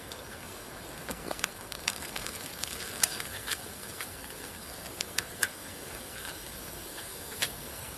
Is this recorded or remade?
remade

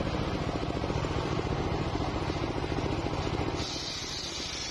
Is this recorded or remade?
recorded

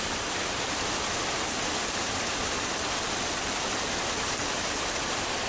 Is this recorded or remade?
recorded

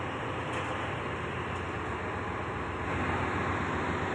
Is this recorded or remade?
recorded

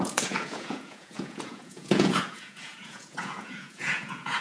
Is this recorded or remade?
remade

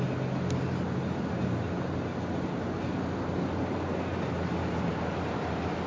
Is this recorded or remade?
recorded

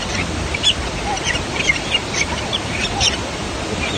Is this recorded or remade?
recorded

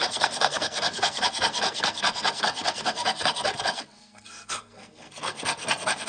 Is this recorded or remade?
remade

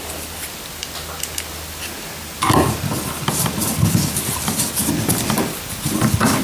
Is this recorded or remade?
recorded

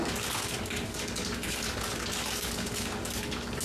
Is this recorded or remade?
remade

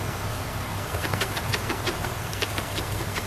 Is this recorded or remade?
remade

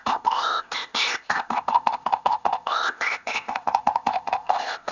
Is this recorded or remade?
remade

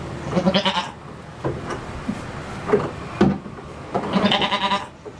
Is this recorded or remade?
recorded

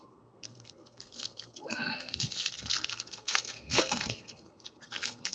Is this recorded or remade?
remade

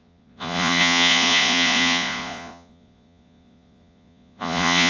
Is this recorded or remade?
remade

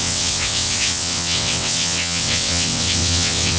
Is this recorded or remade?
remade